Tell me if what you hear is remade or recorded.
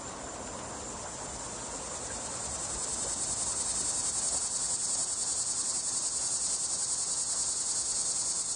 recorded